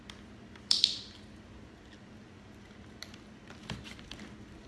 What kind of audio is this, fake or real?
real